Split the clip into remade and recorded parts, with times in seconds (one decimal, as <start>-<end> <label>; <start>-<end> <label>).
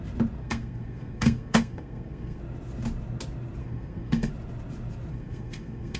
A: 0.0-0.4 recorded; 0.4-2.4 remade; 2.4-3.6 recorded; 3.6-4.3 remade; 4.3-5.1 recorded; 5.1-6.0 remade